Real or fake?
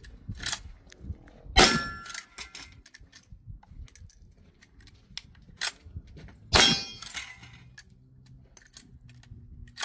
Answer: real